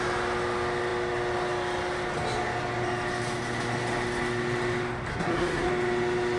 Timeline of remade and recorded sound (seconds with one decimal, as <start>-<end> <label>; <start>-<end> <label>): 0.0-5.1 recorded; 5.1-5.7 remade; 5.7-6.4 recorded